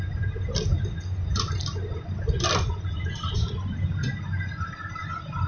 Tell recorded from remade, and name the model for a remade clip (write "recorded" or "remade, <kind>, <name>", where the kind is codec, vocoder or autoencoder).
recorded